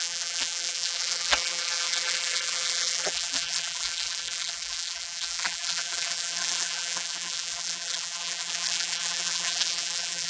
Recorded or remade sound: remade